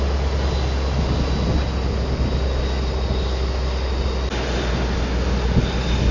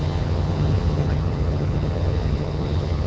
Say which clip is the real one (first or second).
first